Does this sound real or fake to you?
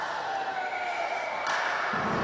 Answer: real